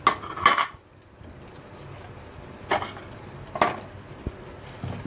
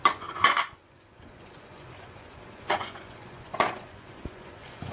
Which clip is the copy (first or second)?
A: second